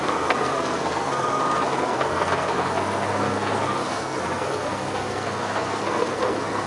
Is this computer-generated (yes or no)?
yes